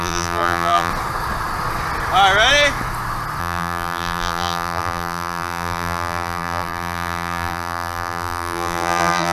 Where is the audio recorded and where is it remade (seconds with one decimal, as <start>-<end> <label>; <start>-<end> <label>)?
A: 0.0-0.9 remade; 0.9-3.4 recorded; 3.4-9.3 remade